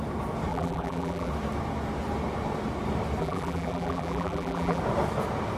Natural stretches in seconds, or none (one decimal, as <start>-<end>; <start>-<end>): 0.0-0.5; 1.3-3.2; 4.8-5.6